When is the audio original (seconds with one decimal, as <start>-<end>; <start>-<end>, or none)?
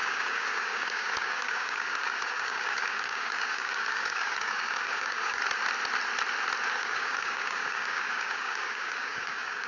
5.4-6.7